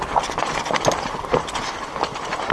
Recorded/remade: recorded